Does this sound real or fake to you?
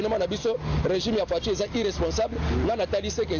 real